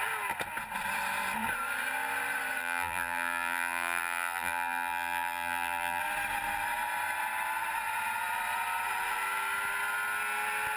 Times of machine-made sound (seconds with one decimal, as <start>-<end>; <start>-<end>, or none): 2.6-6.0